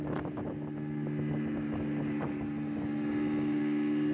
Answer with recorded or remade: recorded